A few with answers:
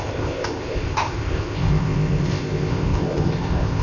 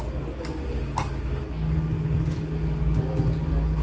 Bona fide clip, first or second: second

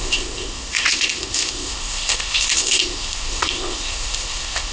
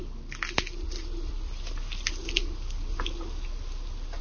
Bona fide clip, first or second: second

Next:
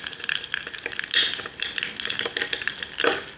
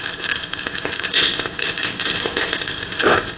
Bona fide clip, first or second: first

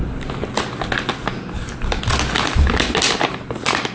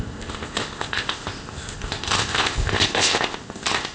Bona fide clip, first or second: first